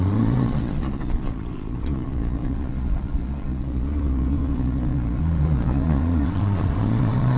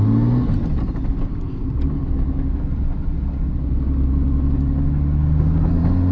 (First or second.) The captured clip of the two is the second